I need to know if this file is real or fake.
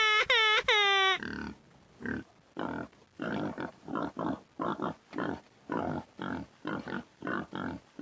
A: real